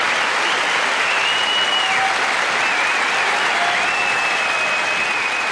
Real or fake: real